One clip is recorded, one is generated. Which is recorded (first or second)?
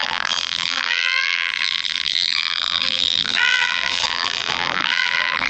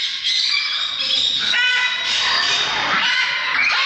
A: second